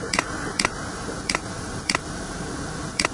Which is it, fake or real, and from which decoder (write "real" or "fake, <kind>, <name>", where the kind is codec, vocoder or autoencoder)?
fake, vocoder, BigVGAN v2